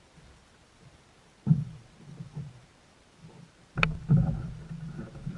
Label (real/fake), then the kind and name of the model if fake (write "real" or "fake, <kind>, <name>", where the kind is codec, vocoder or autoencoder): fake, vocoder, BigVGAN v2